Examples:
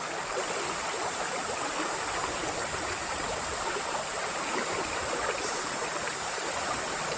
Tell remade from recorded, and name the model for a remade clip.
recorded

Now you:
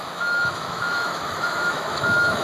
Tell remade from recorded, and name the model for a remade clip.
remade, autoencoder, DAC-VAE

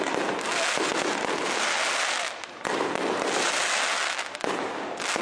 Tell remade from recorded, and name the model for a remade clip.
recorded